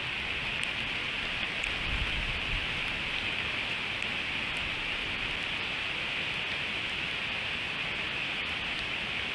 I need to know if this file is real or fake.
real